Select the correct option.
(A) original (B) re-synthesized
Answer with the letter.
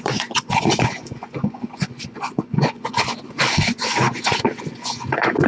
B